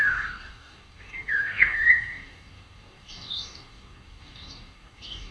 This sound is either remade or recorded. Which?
remade